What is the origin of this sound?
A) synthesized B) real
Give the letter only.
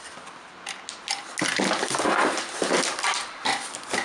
B